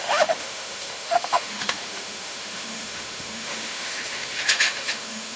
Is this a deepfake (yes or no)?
yes